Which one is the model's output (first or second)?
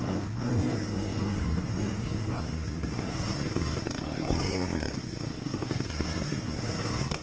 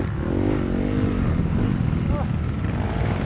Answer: first